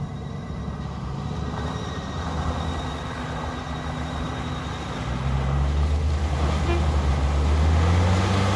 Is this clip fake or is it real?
real